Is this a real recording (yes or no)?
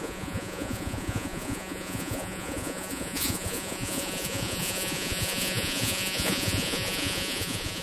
no